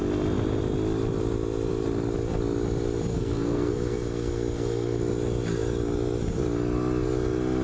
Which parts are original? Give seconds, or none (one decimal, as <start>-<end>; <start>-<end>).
0.0-3.1; 5.0-7.6